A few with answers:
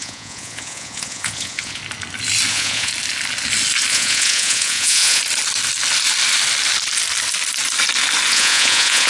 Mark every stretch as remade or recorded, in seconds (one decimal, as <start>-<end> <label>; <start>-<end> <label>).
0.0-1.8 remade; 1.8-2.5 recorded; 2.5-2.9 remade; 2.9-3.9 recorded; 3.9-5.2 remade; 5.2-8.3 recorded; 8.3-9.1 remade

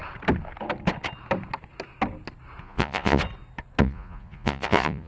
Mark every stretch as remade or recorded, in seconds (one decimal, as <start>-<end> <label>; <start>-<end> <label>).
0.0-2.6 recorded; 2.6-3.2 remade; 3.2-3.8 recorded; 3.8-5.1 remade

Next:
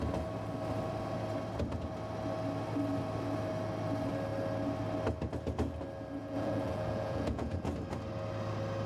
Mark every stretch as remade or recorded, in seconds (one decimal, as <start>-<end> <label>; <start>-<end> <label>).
0.0-6.2 recorded; 6.2-7.7 remade; 7.7-8.9 recorded